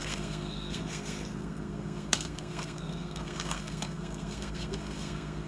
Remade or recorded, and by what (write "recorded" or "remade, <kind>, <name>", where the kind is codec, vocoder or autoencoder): remade, codec, SNAC